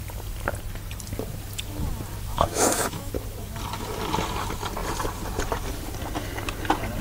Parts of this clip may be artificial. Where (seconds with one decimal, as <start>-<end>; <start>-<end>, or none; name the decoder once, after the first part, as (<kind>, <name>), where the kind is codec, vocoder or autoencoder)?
2.3-3.1 (autoencoder, DAC-VAE)